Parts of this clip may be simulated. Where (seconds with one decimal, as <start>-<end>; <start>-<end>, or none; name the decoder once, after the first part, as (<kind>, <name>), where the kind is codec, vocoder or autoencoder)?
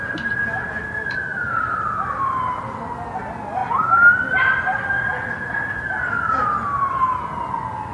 none